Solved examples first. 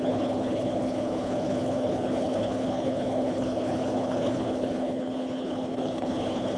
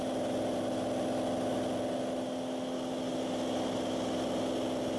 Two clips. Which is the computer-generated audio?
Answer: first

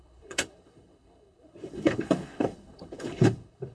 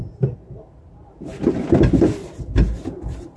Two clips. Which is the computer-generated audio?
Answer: first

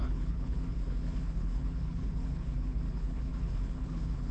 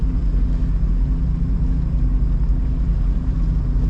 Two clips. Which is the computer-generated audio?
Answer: first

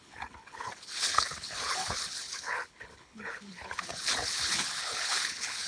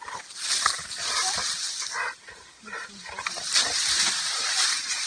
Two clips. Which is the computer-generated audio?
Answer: first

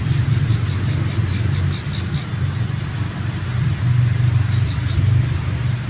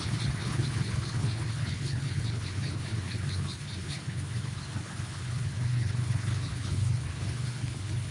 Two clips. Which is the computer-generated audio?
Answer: second